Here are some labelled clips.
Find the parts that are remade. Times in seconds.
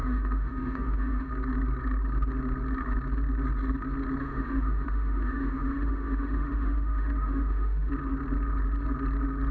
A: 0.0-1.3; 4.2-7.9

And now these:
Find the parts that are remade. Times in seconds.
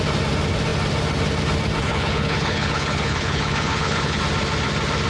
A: 1.9-4.2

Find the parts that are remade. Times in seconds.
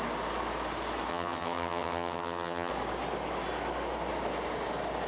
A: 1.1-2.7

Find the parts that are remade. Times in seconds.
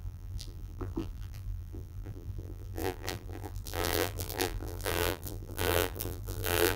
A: 0.0-6.8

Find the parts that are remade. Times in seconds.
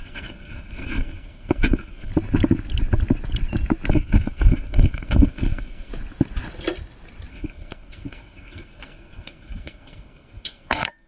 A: 0.0-2.1; 3.9-5.9; 7.3-11.1